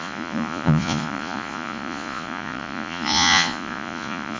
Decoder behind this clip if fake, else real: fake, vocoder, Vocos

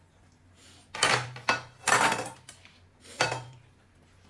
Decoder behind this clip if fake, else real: real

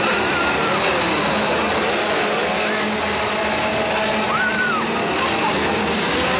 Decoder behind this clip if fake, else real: real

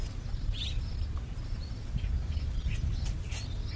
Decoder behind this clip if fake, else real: real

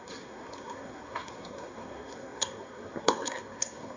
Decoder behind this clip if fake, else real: fake, codec, SNAC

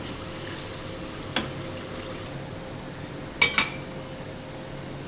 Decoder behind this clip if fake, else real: real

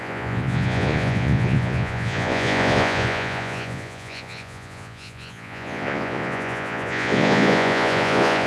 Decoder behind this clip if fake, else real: fake, vocoder, Vocos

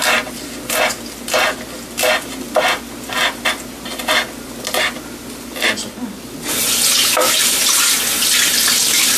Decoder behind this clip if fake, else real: real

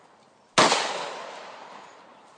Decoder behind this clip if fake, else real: real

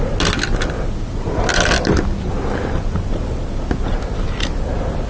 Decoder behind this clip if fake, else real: real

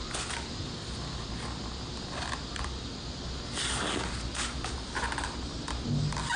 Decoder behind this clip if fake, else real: real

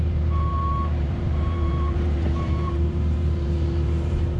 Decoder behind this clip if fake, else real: fake, vocoder, BigVGAN v2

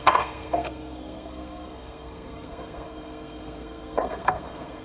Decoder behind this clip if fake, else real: fake, codec, SNAC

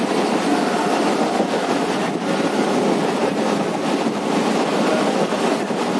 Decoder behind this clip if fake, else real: real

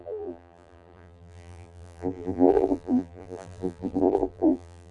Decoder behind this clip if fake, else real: fake, vocoder, BigVGAN v2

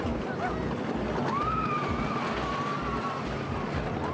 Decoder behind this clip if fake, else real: real